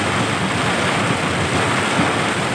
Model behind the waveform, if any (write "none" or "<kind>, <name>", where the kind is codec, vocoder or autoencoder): none